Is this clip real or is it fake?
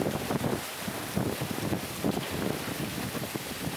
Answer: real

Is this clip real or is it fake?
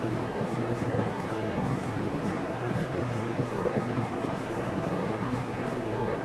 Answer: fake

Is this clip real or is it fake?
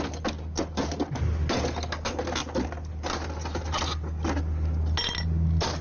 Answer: real